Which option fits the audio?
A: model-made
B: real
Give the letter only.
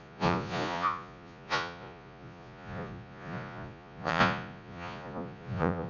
A